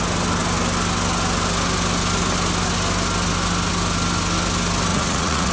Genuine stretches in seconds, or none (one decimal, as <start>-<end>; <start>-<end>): 0.0-4.9